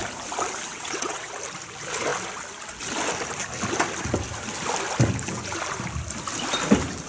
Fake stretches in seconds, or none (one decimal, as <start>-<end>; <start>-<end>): 0.7-1.3